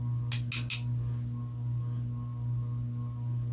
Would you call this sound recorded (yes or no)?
yes